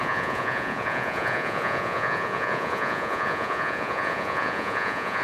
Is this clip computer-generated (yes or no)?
yes